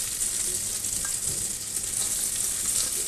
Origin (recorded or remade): recorded